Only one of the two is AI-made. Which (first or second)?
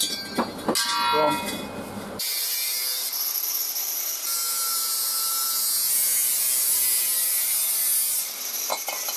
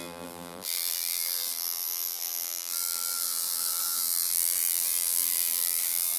second